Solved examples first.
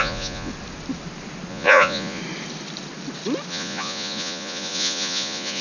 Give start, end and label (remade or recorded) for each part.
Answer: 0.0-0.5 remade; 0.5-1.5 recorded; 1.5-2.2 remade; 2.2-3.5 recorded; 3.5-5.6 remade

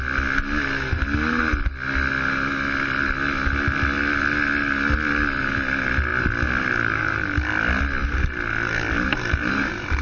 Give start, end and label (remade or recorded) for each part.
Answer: 0.0-10.0 recorded

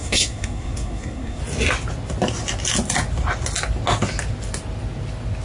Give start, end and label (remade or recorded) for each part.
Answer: 0.0-1.4 remade; 1.4-5.4 recorded

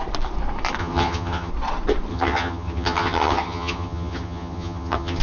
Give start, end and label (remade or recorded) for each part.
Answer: 0.0-0.8 recorded; 0.8-1.5 remade; 1.5-2.1 recorded; 2.1-5.2 remade